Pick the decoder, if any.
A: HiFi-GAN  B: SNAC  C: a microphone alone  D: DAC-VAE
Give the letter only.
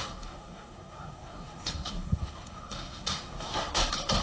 B